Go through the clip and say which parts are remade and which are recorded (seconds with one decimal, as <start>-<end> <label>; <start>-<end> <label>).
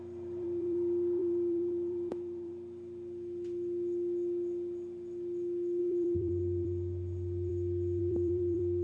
0.0-2.5 remade; 2.5-5.8 recorded; 5.8-7.5 remade; 7.5-8.0 recorded; 8.0-8.8 remade